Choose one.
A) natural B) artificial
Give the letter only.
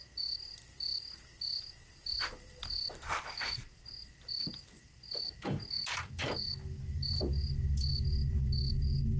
A